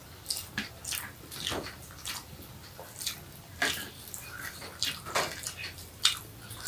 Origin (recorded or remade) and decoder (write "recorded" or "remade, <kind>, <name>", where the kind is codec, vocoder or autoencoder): remade, vocoder, BigVGAN v2